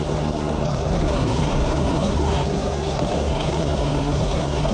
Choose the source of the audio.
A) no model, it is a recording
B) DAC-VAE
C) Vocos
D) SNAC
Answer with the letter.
D